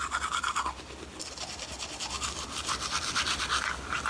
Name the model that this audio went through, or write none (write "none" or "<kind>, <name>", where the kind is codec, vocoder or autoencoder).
none